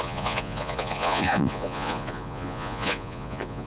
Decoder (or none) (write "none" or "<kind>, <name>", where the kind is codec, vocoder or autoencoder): vocoder, Vocos